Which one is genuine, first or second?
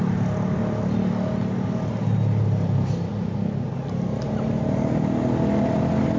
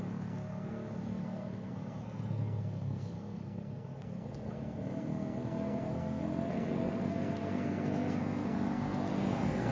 first